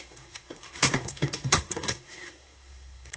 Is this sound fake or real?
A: fake